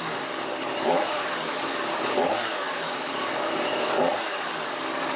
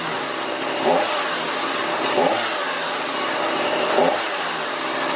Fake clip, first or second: first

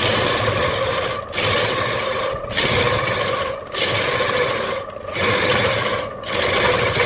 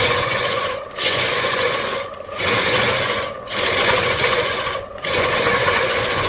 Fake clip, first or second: second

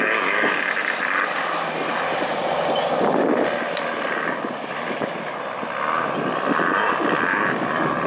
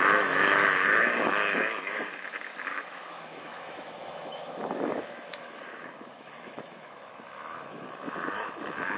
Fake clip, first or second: second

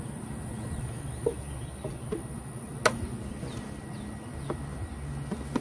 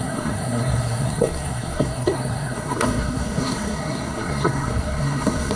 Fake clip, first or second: second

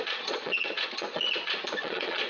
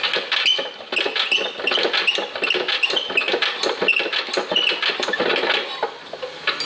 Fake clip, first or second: first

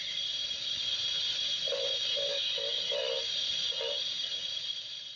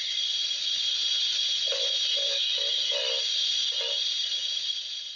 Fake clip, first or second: first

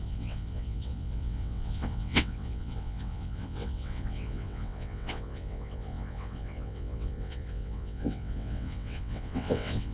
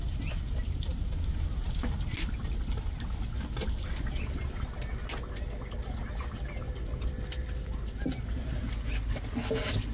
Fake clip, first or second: first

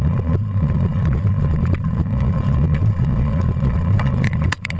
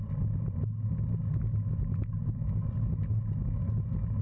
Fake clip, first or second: first